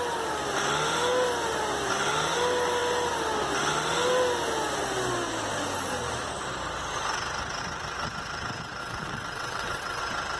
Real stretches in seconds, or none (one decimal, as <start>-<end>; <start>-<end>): 0.0-8.8; 10.0-10.4